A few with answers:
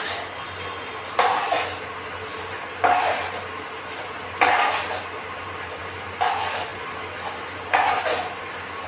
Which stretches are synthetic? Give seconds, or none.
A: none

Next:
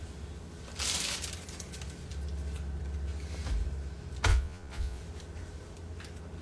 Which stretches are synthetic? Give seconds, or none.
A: 4.3-5.0 (vocoder, Vocos)

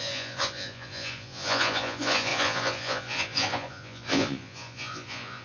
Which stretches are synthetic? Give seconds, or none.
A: 0.0-5.4 (vocoder, Vocos)

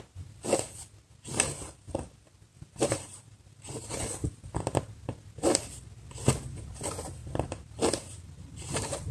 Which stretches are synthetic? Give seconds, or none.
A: 2.5-4.0 (vocoder, BigVGAN v2); 7.2-7.7

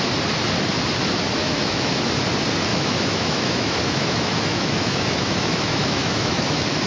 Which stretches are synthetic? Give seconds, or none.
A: 1.4-2.0 (autoencoder, DAC-VAE); 2.7-6.9

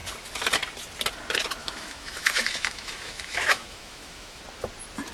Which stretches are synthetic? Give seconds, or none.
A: 1.6-4.4 (autoencoder, DAC-VAE)

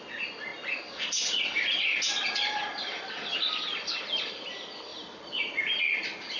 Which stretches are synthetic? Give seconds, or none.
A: none

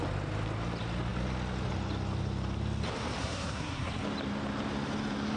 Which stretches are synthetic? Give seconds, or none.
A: 3.2-3.9 (codec, SNAC)